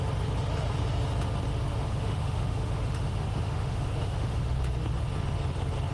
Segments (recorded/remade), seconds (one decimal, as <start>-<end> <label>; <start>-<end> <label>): 0.0-1.8 recorded; 1.8-4.6 remade; 4.6-5.9 recorded